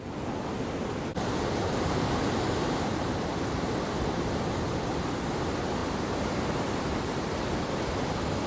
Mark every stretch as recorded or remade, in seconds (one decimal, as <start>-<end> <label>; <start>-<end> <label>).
0.0-1.1 recorded; 1.1-2.3 remade; 2.3-5.8 recorded; 5.8-7.5 remade; 7.5-8.5 recorded